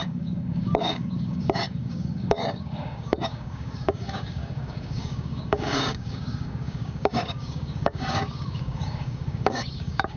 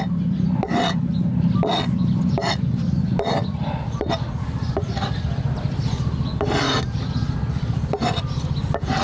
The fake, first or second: first